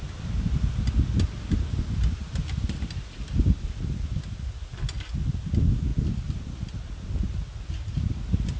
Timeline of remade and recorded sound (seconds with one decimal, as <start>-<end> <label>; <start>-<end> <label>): 0.0-8.6 recorded